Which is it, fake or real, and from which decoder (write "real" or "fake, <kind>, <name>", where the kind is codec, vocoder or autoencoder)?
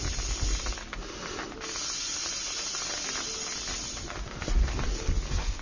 real